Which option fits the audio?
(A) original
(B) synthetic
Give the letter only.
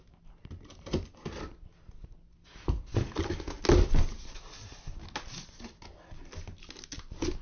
A